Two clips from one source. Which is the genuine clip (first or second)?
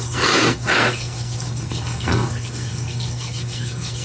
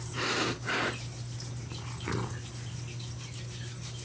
second